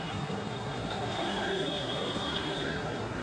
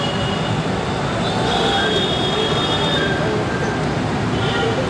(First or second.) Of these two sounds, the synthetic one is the first